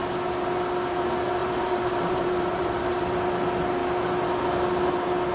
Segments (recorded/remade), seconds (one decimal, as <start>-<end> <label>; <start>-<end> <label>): 0.0-1.4 recorded; 1.4-2.8 remade; 2.8-5.3 recorded